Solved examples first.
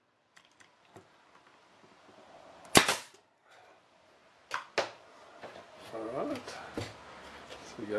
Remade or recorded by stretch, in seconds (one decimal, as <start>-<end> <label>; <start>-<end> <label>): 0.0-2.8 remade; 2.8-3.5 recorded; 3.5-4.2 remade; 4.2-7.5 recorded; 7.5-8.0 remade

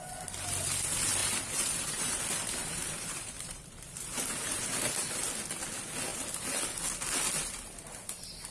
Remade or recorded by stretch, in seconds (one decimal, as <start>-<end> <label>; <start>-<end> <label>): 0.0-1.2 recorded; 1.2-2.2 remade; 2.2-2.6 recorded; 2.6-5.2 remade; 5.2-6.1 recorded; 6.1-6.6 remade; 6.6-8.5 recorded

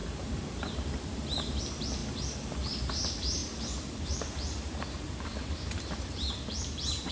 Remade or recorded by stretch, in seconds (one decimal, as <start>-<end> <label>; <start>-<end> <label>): 0.0-2.0 remade; 2.0-2.8 recorded; 2.8-7.1 remade